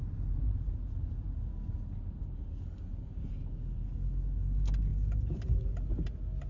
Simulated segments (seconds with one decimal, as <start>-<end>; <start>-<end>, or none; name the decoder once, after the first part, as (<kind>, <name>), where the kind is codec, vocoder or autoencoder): 0.0-3.0 (vocoder, BigVGAN v2); 4.9-5.9